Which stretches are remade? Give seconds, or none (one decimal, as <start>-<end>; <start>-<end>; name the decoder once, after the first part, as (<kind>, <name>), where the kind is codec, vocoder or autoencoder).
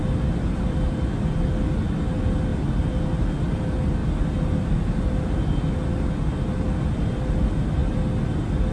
none